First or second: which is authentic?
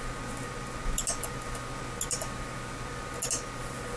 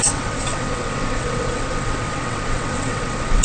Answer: first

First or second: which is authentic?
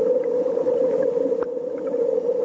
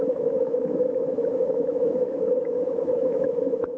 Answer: first